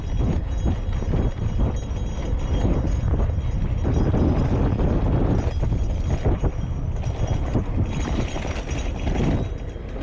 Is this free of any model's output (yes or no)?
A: yes